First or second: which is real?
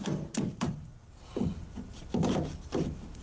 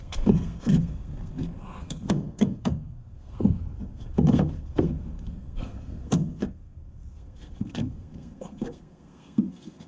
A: first